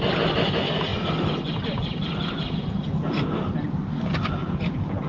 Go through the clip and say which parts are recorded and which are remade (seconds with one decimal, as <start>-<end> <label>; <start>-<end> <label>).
0.0-5.1 recorded